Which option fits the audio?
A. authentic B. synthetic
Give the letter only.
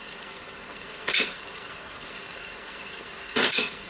B